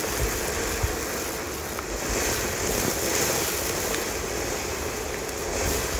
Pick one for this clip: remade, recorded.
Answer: recorded